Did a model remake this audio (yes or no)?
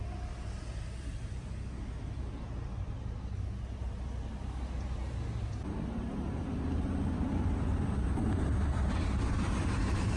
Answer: no